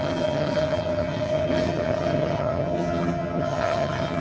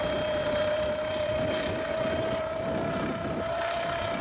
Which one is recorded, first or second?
second